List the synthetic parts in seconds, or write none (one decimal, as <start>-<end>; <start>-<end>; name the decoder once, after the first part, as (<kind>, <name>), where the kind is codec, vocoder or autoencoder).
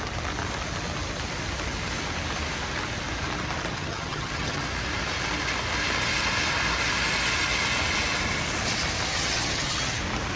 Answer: 3.7-4.6 (vocoder, HiFi-GAN); 9.1-10.0